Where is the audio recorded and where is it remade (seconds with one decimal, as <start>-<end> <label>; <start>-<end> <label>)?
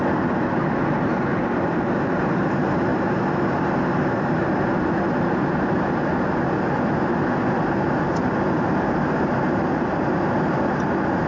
0.0-0.5 recorded; 0.5-2.4 remade; 2.4-11.3 recorded